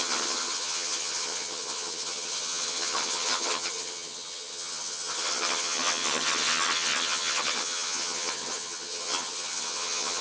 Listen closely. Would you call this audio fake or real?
fake